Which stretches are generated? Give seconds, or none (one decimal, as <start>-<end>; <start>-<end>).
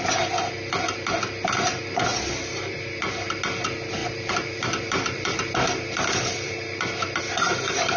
2.1-3.4; 4.0-7.2